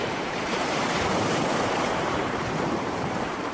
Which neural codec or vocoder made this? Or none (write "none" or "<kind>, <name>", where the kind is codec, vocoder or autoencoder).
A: vocoder, BigVGAN v2